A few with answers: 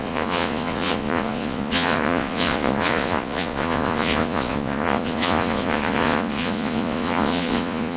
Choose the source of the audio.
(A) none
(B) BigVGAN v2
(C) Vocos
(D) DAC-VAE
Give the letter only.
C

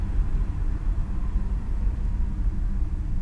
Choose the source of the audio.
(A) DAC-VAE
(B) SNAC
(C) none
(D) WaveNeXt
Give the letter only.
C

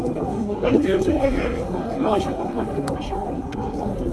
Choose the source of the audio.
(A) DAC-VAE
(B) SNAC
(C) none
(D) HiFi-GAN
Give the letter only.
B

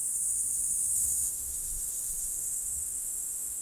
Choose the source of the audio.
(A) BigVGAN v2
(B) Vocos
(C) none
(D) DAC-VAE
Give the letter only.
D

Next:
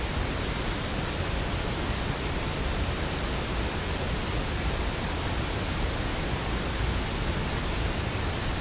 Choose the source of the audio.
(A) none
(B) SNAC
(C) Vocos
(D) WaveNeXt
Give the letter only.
A